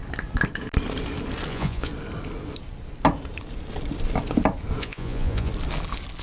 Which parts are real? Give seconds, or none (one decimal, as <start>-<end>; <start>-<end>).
0.0-1.5; 1.9-4.8; 5.5-6.2